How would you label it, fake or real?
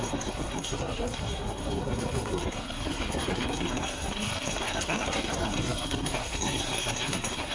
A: fake